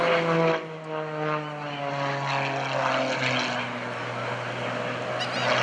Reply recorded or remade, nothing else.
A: recorded